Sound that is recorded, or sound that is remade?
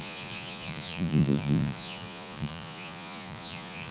remade